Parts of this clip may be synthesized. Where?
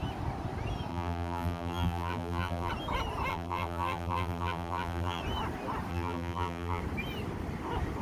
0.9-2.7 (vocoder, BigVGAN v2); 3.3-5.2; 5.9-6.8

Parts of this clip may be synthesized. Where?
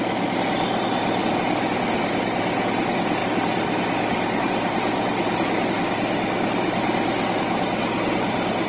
none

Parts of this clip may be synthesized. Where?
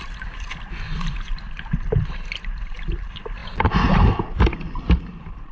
0.0-3.4 (vocoder, BigVGAN v2); 4.7-5.5